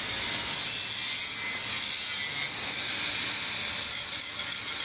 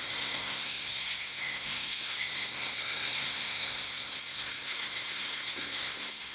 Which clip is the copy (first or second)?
second